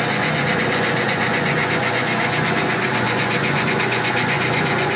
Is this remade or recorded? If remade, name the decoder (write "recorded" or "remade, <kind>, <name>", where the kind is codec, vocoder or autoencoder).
remade, vocoder, Vocos